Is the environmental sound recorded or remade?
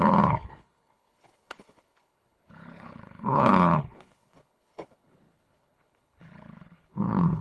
remade